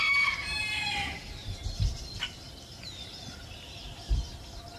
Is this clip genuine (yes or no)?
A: yes